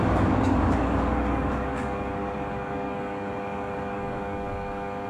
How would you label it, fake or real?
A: fake